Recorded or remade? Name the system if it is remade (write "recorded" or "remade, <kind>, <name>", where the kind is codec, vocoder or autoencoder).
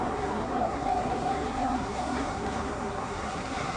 remade, codec, SNAC